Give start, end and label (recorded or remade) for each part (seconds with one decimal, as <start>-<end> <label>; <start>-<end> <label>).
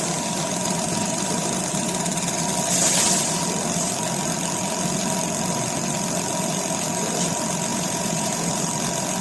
0.0-7.7 recorded; 7.7-8.5 remade; 8.5-9.2 recorded